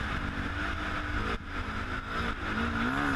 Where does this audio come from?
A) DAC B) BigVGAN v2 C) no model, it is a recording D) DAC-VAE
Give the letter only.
C